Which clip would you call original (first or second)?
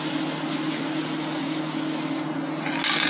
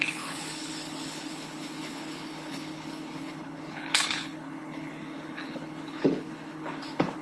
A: first